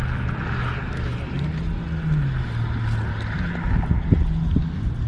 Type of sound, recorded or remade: recorded